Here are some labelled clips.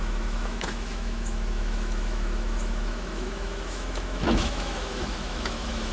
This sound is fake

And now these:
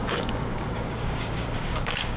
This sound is fake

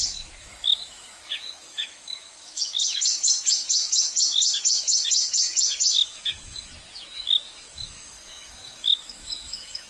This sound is fake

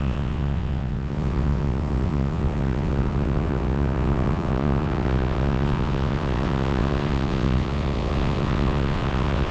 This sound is fake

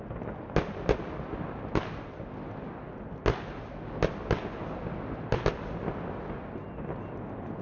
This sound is real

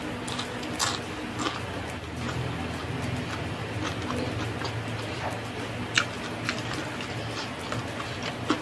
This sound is real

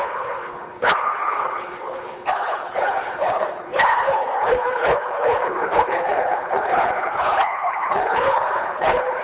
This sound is fake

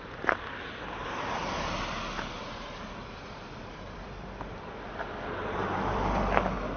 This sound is fake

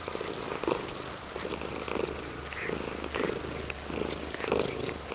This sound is real